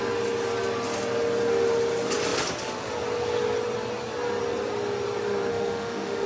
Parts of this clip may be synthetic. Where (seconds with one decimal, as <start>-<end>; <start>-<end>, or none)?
5.5-6.3